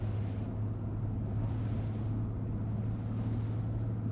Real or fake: real